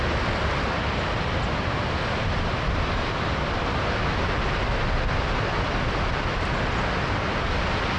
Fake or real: real